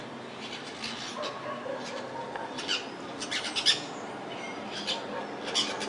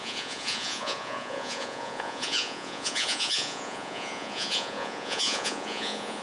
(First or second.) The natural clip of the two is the first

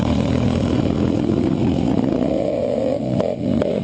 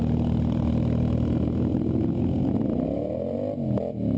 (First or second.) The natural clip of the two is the second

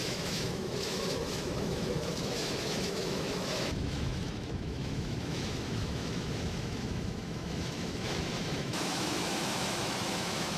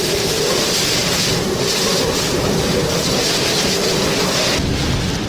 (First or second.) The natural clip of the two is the second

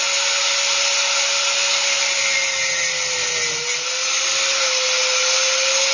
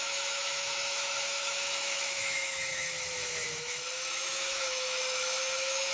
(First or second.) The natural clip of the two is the first